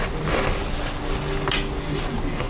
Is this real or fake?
real